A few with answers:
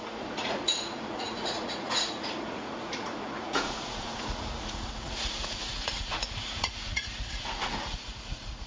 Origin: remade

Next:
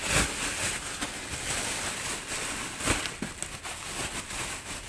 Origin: recorded